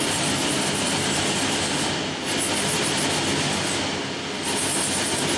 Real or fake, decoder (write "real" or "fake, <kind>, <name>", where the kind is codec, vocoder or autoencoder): real